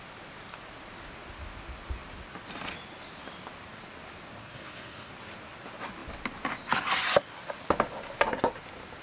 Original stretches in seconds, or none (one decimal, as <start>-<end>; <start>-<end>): 0.0-4.4; 5.1-9.0